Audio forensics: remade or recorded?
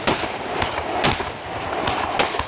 recorded